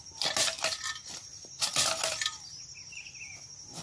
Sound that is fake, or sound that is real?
real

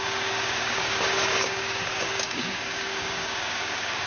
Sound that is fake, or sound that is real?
fake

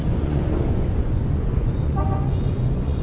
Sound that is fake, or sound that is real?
fake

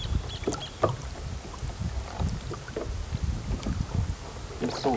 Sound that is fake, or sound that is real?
real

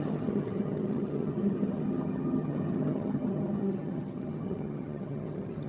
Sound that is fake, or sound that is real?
fake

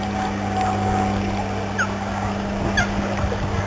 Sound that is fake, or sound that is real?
real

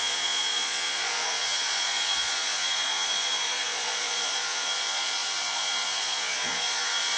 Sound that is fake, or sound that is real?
fake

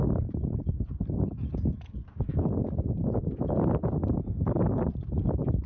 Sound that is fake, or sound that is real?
real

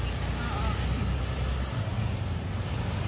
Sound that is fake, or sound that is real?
real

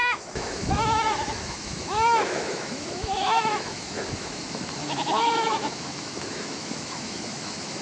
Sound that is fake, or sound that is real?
fake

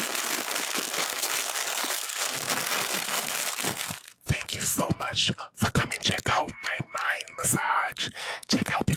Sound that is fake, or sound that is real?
fake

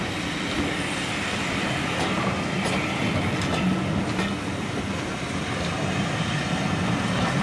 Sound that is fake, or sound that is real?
real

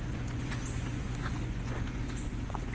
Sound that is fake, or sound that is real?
fake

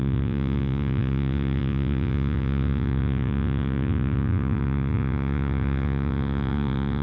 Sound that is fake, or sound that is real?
fake